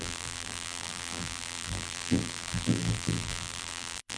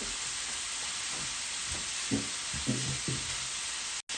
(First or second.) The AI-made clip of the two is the first